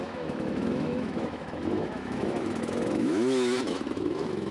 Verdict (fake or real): fake